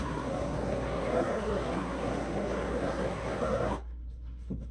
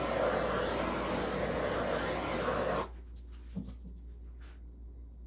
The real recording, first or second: second